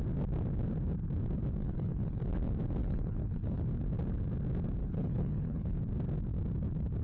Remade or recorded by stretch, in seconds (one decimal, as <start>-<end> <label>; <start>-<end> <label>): 0.0-1.6 recorded; 1.6-2.2 remade; 2.2-2.8 recorded; 2.8-3.6 remade; 3.6-4.8 recorded; 4.8-5.8 remade; 5.8-7.0 recorded